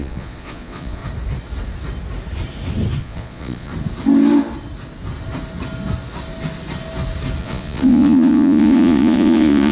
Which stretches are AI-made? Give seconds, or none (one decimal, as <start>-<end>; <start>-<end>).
0.0-1.0; 3.0-3.7; 7.4-9.7

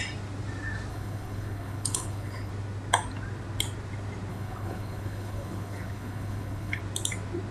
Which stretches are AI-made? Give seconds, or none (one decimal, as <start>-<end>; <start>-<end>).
0.9-2.5; 4.3-6.8